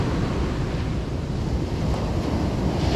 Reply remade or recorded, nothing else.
recorded